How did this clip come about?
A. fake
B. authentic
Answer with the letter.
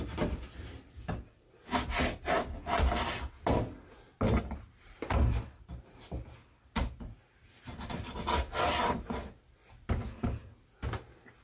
B